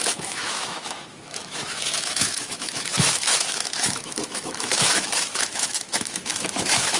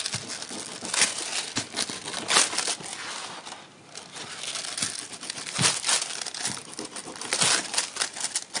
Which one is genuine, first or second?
second